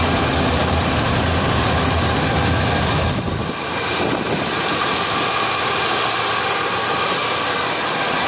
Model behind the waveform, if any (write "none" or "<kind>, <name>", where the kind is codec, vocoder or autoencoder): none